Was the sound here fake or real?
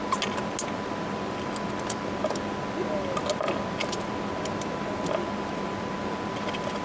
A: real